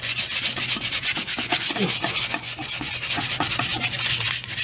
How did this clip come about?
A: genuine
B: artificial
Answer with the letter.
B